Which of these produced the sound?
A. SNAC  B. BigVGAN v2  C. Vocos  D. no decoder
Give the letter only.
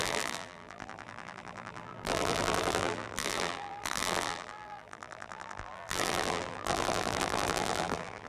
B